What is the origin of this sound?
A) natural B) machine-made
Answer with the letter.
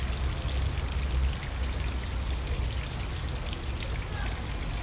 A